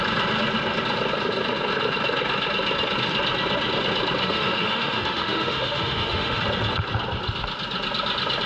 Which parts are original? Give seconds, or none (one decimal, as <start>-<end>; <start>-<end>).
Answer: 0.0-4.2; 6.4-8.5